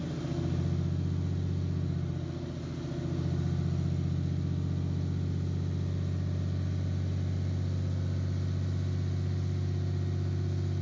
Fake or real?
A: real